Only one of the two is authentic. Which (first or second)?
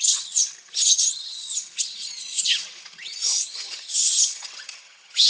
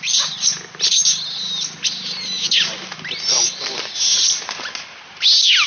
second